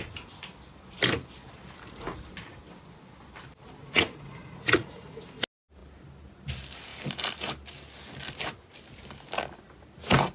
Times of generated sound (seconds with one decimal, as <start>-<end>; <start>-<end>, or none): 3.8-5.2